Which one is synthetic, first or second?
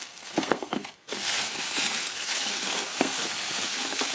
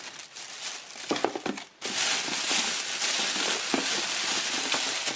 first